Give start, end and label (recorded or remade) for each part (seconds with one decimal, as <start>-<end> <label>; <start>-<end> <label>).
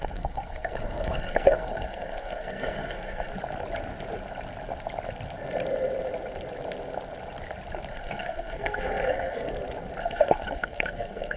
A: 0.0-3.3 remade; 3.3-7.9 recorded; 7.9-9.5 remade; 9.5-10.0 recorded; 10.0-11.4 remade